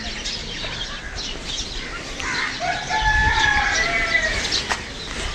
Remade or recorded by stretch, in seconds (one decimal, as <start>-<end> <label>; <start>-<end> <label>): 0.0-0.4 recorded; 0.4-1.9 remade; 1.9-3.2 recorded; 3.2-4.4 remade; 4.4-5.3 recorded